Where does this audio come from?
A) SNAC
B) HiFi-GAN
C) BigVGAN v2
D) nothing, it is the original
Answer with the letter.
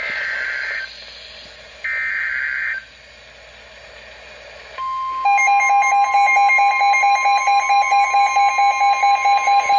D